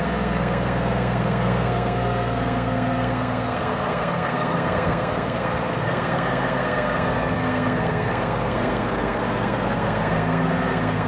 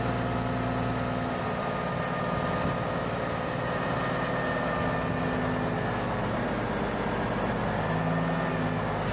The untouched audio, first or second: second